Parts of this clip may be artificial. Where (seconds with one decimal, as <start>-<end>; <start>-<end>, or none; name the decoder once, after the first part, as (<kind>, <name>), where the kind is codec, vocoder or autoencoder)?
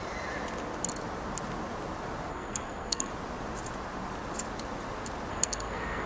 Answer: 2.3-3.1 (codec, SNAC); 5.3-6.1